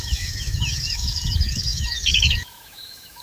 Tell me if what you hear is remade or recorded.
remade